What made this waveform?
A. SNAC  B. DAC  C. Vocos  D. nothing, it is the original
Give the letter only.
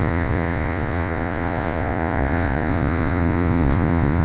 C